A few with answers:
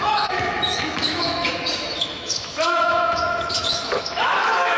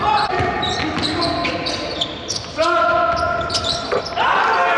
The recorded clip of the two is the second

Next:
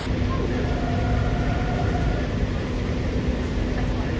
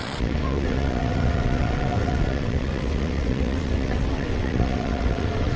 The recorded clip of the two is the first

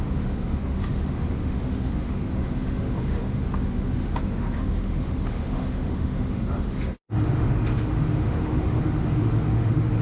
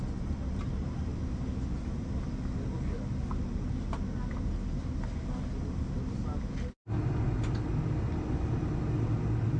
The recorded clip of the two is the second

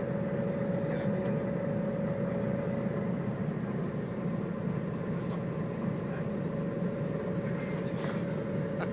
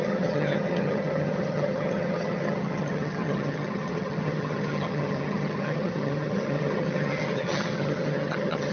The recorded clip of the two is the first